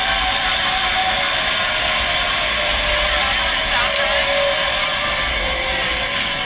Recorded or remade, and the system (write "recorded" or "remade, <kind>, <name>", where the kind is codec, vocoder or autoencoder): recorded